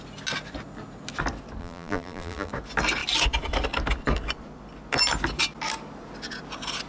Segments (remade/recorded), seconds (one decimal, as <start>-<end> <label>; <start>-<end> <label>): 0.0-1.6 recorded; 1.6-2.5 remade; 2.5-6.9 recorded